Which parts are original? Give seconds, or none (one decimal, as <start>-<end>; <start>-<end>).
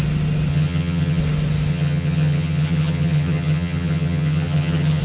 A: 0.0-0.5; 1.2-1.7